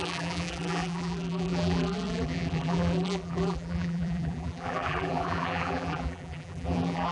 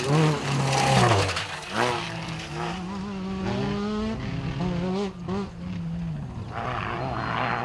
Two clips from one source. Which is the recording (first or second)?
second